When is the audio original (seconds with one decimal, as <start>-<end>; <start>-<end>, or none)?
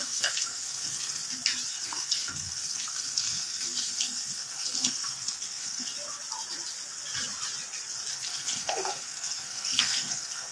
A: 1.2-1.7; 5.9-8.1